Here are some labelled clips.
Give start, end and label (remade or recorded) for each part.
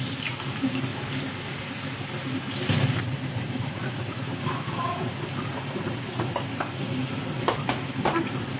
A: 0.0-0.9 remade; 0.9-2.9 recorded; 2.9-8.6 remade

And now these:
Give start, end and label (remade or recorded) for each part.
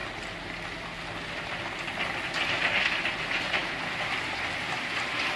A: 0.0-5.4 recorded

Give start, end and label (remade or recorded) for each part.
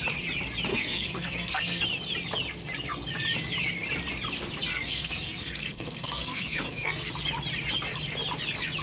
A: 0.0-0.7 recorded; 0.7-1.8 remade; 1.8-4.7 recorded; 4.7-7.1 remade; 7.1-8.8 recorded